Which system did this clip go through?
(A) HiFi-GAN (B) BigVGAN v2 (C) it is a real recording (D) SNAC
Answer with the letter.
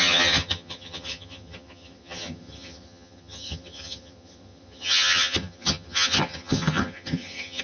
A